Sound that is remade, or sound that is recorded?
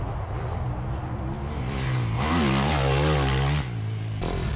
recorded